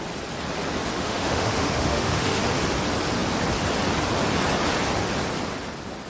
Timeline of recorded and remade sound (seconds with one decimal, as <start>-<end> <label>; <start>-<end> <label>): 0.0-0.9 recorded; 0.9-2.4 remade; 2.4-6.1 recorded